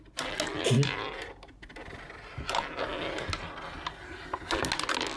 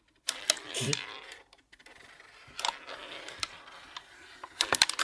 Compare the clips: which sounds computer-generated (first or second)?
second